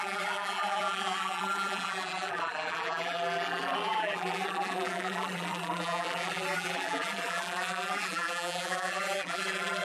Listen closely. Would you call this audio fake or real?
fake